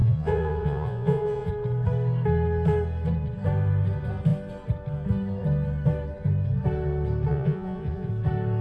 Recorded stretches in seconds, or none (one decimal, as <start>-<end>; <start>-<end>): 1.5-7.3; 8.1-8.6